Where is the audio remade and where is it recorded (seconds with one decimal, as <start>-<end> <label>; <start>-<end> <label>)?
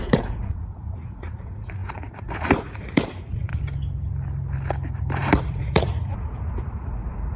0.0-3.5 remade; 3.5-5.4 recorded; 5.4-7.4 remade